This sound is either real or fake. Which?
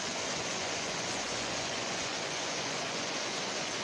fake